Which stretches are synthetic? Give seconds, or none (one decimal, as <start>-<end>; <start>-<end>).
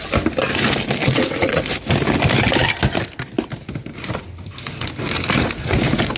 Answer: 1.0-1.6